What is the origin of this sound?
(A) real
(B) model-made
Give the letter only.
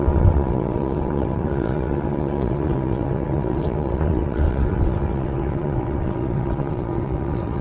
B